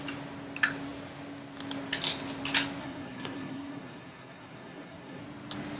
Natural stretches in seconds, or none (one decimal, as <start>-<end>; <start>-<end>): 0.0-2.8; 5.2-5.8